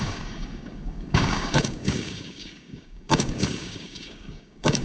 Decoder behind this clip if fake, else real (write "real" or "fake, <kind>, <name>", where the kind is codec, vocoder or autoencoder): fake, codec, DAC